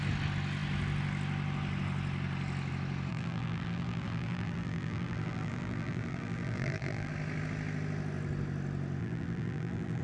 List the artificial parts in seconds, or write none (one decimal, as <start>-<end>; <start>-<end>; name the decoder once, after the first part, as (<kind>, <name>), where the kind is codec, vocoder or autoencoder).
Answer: 3.1-7.1 (vocoder, BigVGAN v2); 9.0-10.0